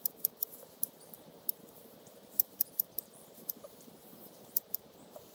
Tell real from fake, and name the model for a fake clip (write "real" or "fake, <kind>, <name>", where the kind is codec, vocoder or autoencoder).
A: fake, vocoder, BigVGAN v2